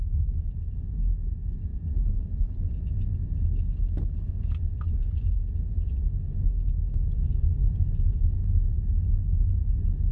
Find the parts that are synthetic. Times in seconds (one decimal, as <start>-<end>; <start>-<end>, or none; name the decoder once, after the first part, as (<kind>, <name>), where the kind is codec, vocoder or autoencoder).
none